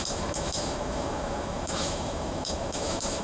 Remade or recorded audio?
remade